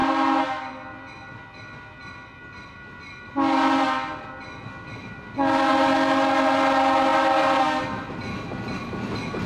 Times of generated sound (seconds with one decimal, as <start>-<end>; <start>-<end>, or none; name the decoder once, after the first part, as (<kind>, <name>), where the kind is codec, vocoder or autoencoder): none